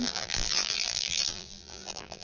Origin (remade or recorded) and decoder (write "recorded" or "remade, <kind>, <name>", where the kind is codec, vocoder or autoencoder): remade, vocoder, BigVGAN v2